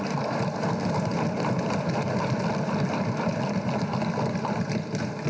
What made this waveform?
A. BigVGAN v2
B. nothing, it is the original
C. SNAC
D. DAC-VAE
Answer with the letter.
B